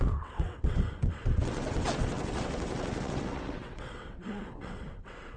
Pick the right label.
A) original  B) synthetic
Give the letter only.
B